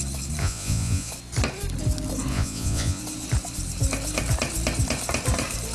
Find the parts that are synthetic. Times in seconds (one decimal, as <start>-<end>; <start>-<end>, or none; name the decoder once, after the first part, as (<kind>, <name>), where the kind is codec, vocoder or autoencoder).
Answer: 0.4-1.1 (vocoder, Vocos); 2.3-3.0